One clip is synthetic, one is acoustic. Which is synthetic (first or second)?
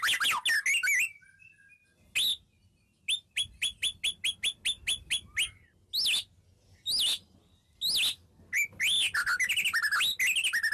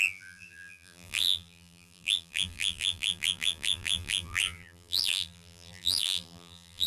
second